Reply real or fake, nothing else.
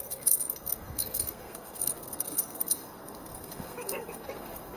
fake